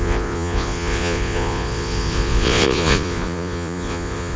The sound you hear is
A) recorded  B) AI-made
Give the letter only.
B